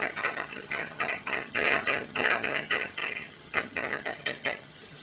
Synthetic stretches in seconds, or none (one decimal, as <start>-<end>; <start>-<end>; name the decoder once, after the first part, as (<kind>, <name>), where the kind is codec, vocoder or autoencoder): 0.0-5.0 (vocoder, HiFi-GAN)